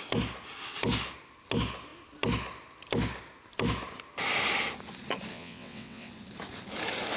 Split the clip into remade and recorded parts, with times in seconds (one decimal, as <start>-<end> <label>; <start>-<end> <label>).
0.0-5.3 recorded; 5.3-6.1 remade; 6.1-7.2 recorded